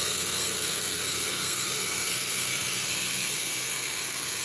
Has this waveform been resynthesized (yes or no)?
yes